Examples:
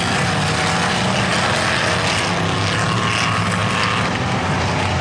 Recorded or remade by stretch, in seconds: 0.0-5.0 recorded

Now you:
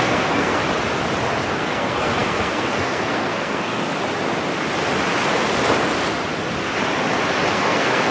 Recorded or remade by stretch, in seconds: 0.0-0.6 remade; 0.6-1.5 recorded; 1.5-3.9 remade; 3.9-7.5 recorded; 7.5-8.1 remade